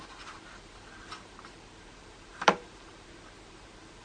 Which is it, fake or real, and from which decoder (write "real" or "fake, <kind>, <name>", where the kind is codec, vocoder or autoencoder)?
fake, vocoder, BigVGAN v2